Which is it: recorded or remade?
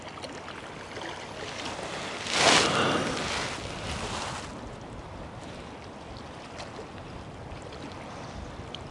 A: recorded